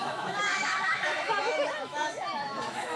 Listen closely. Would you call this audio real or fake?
fake